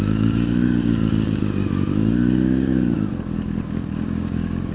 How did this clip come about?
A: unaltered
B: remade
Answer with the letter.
B